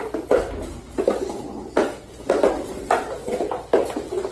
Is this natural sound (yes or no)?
yes